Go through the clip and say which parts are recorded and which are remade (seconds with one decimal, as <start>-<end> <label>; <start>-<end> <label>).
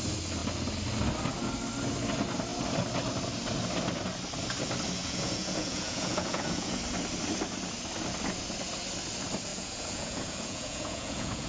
0.0-5.0 recorded; 5.0-6.8 remade; 6.8-9.5 recorded; 9.5-11.5 remade